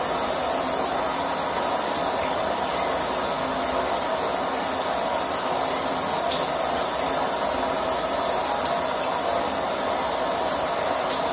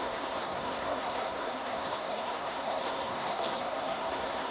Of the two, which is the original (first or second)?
first